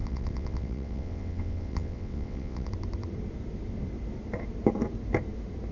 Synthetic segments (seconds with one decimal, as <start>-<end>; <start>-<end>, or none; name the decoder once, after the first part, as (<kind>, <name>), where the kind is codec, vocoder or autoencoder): 0.0-2.7 (vocoder, WaveNeXt)